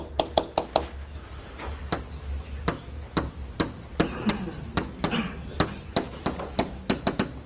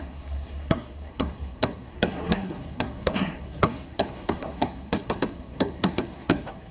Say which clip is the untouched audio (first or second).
first